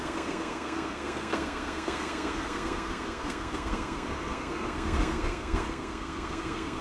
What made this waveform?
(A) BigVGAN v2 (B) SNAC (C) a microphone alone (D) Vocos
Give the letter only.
B